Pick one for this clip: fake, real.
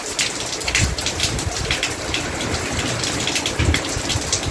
real